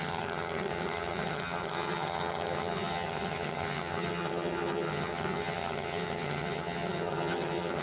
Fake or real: fake